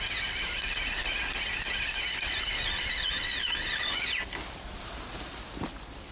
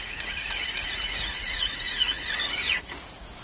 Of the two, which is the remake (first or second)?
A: second